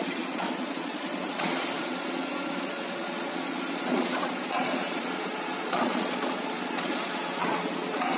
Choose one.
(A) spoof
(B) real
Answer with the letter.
A